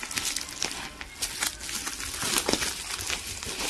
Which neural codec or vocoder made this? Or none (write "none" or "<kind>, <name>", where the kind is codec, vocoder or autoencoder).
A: none